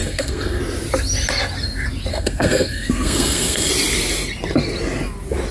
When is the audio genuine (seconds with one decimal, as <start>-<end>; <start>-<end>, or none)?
0.6-2.1; 3.7-5.5